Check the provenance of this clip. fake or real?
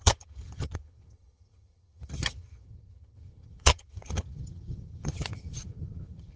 fake